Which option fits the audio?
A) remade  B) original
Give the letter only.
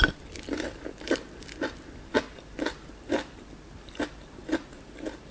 B